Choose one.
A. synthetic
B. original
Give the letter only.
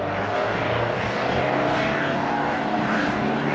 A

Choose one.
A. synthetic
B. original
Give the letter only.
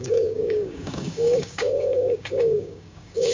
A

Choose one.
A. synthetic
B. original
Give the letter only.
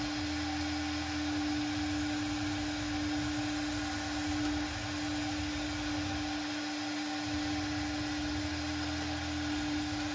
B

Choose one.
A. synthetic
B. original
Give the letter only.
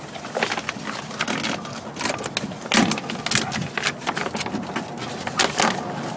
B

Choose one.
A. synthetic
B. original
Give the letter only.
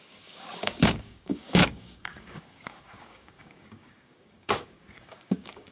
A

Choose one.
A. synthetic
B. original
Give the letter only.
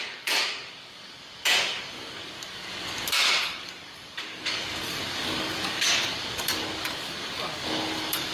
A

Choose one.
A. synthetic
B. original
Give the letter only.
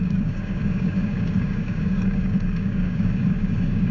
A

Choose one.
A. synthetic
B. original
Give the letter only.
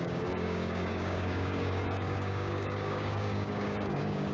A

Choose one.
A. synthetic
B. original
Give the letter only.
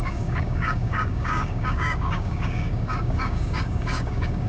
A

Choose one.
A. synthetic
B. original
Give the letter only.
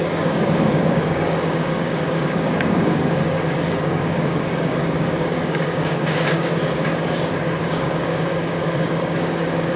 A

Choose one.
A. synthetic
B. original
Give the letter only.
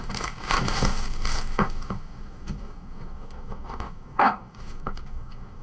A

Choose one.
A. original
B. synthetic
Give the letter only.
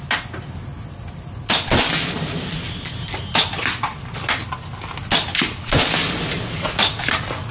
A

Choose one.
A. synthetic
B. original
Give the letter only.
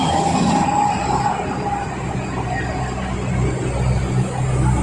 B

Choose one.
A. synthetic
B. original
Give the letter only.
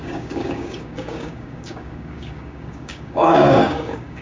A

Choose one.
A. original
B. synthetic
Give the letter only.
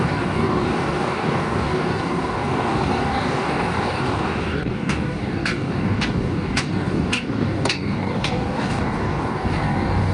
B